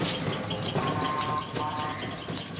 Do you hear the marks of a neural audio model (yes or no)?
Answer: no